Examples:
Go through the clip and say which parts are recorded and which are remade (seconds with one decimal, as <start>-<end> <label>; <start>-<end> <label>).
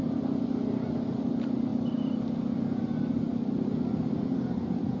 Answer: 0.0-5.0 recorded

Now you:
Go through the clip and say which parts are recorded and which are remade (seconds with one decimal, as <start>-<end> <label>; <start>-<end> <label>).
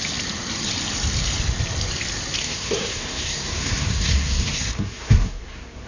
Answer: 0.0-2.4 recorded; 2.4-5.9 remade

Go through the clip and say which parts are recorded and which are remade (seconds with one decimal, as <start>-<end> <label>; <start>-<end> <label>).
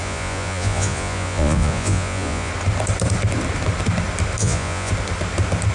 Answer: 0.0-2.5 remade; 2.5-4.4 recorded; 4.4-4.9 remade; 4.9-5.7 recorded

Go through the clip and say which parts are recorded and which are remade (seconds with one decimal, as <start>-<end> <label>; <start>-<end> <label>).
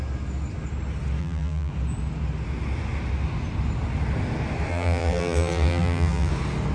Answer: 0.0-1.2 recorded; 1.2-1.7 remade; 1.7-4.7 recorded; 4.7-6.3 remade; 6.3-6.7 recorded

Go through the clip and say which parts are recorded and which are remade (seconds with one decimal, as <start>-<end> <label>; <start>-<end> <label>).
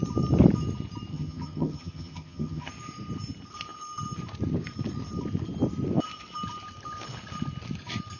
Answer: 0.0-1.1 recorded; 1.1-2.7 remade; 2.7-8.2 recorded